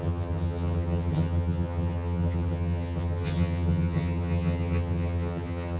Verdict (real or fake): fake